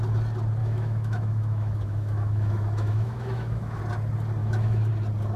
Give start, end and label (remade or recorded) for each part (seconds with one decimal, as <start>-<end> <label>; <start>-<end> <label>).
0.0-0.6 recorded; 0.6-3.8 remade; 3.8-4.4 recorded; 4.4-4.9 remade; 4.9-5.4 recorded

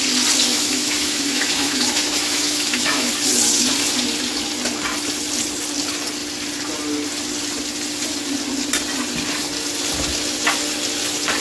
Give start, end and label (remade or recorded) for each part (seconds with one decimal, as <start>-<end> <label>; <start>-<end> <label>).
0.0-0.5 recorded; 0.5-3.1 remade; 3.1-11.4 recorded

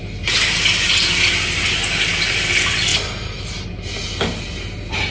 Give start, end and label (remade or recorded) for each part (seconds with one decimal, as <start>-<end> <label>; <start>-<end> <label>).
0.0-5.1 recorded

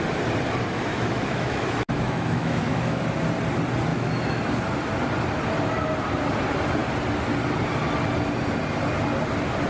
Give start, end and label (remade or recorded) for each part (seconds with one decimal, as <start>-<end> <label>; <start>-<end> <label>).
0.0-0.9 recorded; 0.9-3.0 remade; 3.0-3.9 recorded; 3.9-4.4 remade; 4.4-9.7 recorded